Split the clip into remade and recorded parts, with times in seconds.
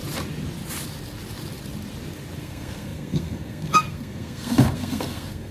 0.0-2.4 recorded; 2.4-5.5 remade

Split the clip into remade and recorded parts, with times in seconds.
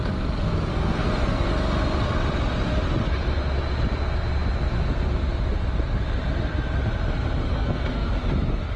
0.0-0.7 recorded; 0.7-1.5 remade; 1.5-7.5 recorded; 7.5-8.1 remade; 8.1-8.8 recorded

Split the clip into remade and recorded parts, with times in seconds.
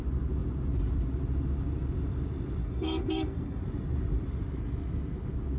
0.0-2.6 recorded; 2.6-3.6 remade; 3.6-5.6 recorded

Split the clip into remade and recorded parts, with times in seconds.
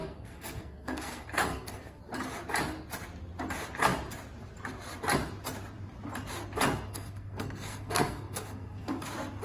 0.0-2.0 remade; 2.0-6.9 recorded; 6.9-9.0 remade; 9.0-9.4 recorded